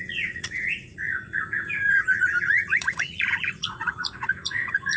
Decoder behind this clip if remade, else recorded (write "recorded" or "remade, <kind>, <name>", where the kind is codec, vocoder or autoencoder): remade, vocoder, Vocos